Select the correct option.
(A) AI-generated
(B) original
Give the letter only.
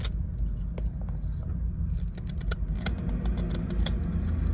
B